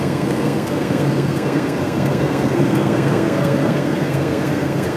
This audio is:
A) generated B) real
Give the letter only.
A